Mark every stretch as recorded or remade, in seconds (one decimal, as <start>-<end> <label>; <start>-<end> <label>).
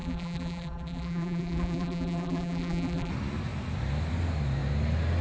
0.0-3.1 remade; 3.1-5.2 recorded